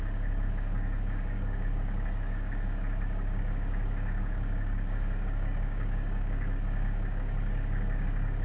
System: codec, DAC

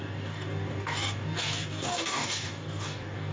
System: codec, DAC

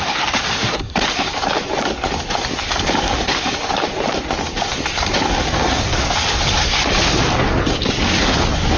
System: codec, DAC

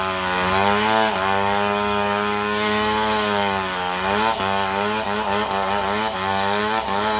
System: codec, DAC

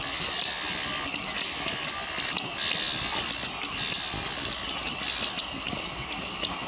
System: none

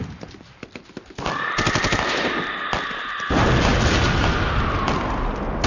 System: none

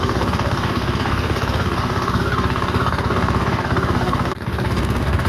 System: codec, DAC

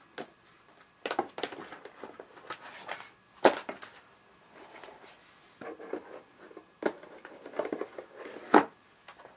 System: none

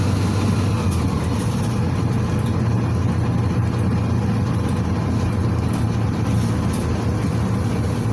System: none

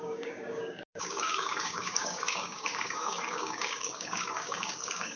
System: codec, DAC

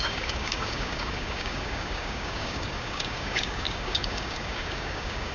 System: codec, DAC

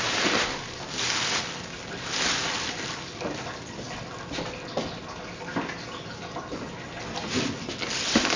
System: none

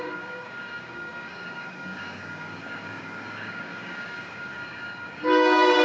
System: codec, DAC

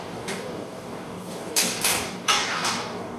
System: codec, DAC